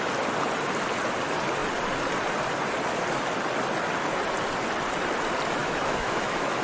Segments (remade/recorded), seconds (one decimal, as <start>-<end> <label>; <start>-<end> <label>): 0.0-5.6 recorded; 5.6-6.6 remade